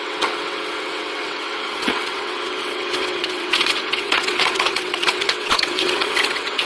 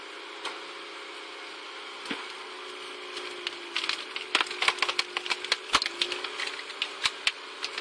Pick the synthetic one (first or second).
first